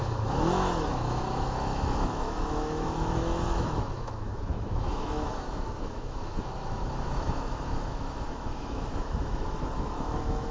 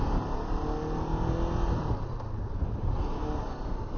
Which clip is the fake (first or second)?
first